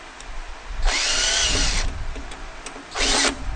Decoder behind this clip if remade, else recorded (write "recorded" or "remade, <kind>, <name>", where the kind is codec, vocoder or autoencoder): recorded